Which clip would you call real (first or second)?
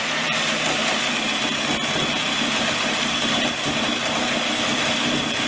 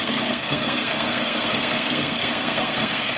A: first